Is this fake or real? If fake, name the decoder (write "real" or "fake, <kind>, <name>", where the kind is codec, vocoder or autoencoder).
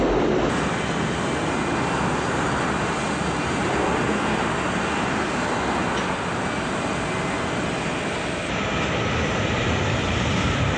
real